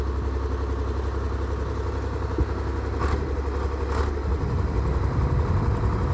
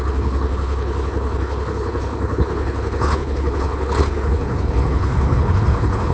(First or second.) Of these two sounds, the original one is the first